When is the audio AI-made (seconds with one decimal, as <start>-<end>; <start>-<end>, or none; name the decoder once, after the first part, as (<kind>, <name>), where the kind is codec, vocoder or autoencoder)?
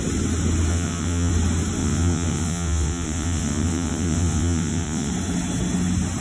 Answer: 0.7-1.3 (vocoder, WaveNeXt); 1.8-5.1